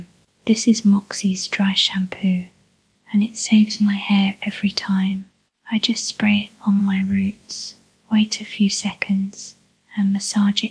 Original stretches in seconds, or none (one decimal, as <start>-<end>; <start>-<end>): 0.0-3.4; 4.1-6.8; 7.5-10.7